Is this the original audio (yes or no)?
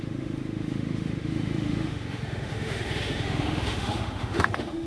no